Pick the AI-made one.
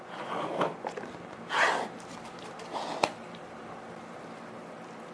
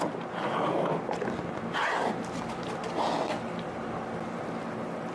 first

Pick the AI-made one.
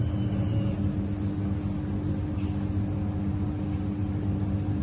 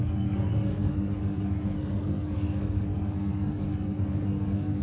second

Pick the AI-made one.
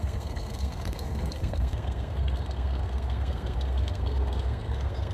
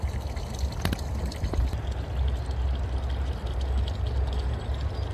first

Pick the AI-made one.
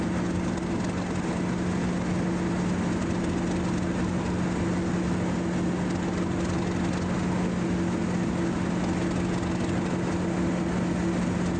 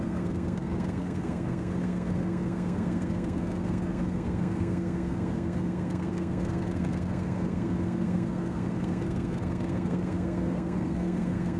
second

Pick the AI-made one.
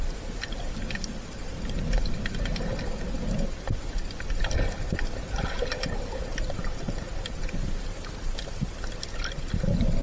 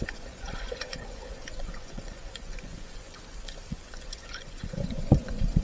second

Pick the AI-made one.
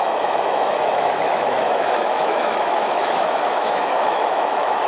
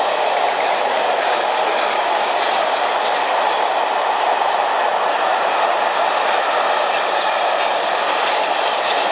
first